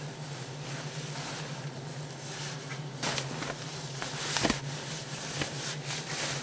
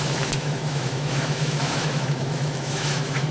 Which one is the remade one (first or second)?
second